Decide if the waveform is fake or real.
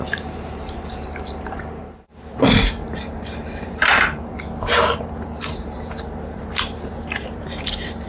fake